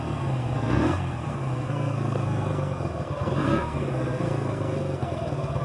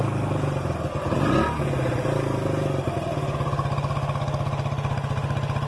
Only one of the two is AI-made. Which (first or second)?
first